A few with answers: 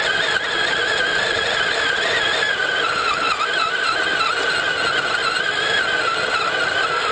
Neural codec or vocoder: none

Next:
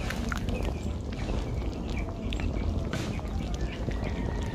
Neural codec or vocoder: none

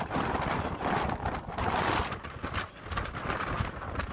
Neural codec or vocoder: none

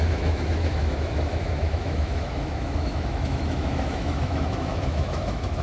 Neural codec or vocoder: autoencoder, DAC-VAE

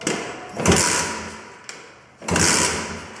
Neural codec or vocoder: none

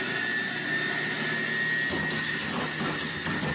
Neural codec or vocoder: none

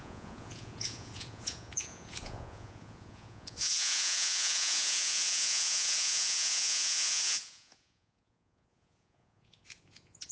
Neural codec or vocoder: vocoder, Vocos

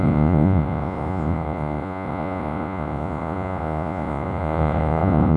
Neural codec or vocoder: vocoder, Vocos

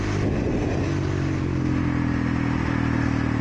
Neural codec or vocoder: none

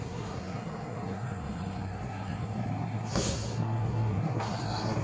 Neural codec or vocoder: codec, SNAC